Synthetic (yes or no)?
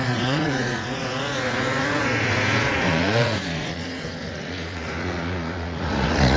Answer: yes